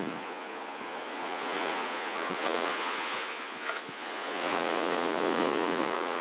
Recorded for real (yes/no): no